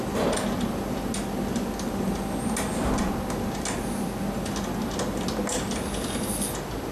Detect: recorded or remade recorded